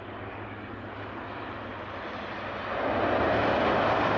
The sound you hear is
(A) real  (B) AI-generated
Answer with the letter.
A